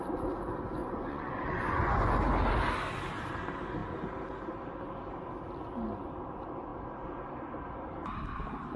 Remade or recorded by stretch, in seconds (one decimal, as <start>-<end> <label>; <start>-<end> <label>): 0.0-0.8 recorded; 0.8-2.2 remade; 2.2-8.8 recorded